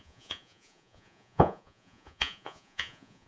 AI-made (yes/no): yes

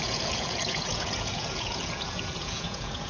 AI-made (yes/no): yes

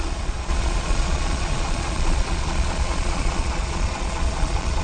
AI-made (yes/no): yes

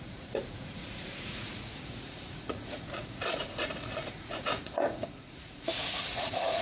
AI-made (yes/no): yes